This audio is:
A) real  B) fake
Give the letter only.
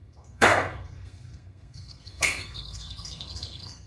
B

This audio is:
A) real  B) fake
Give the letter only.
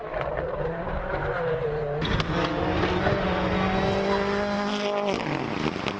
A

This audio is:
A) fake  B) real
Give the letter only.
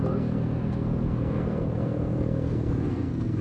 A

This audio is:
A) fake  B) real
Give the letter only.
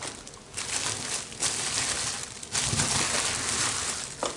B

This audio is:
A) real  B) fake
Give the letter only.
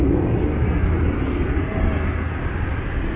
A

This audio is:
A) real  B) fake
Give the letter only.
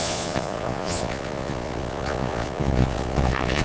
B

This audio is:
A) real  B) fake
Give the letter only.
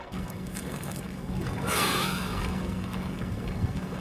B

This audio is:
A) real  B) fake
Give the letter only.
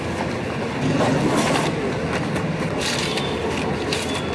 A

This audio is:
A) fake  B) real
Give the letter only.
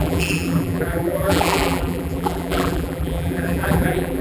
A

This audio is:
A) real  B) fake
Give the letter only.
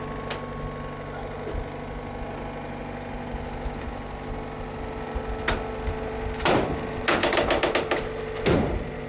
A